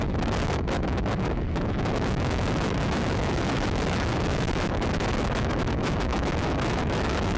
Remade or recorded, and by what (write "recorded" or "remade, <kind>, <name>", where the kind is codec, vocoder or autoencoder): remade, autoencoder, DAC-VAE